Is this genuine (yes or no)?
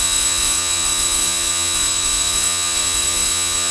no